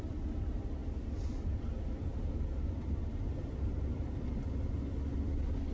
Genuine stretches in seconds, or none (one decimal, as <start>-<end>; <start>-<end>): 0.0-5.7